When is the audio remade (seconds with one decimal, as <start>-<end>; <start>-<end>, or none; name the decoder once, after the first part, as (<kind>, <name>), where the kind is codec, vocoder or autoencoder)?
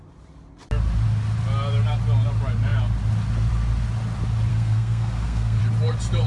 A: 4.5-5.6 (codec, SNAC)